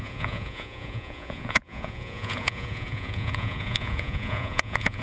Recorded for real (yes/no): no